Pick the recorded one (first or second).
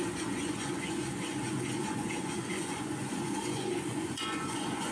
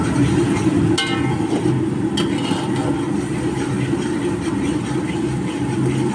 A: second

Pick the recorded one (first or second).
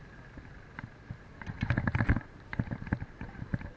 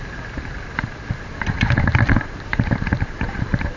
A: first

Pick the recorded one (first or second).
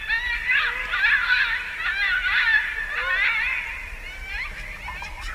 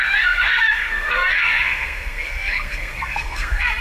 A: first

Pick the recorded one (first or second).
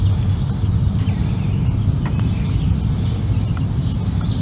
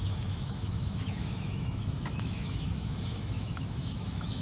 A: first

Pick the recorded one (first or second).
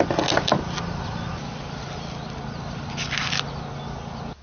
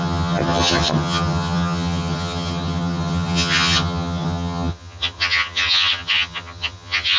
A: first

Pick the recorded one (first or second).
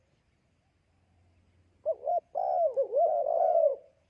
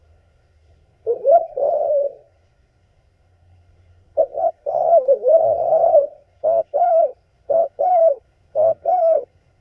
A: first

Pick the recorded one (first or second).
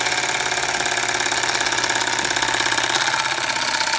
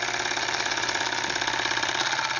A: first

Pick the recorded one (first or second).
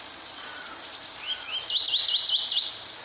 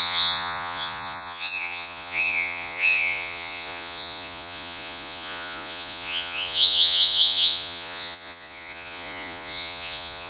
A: first